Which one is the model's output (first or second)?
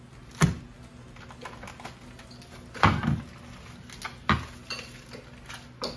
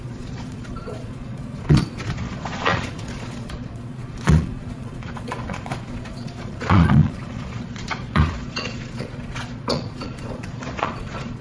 second